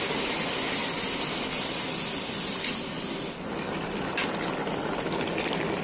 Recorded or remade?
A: recorded